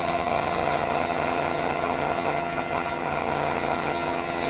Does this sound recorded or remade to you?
remade